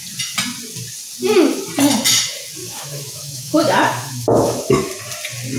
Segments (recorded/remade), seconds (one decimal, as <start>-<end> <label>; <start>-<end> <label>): 0.0-2.6 recorded; 2.6-5.0 remade; 5.0-5.6 recorded